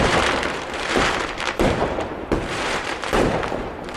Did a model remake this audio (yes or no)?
yes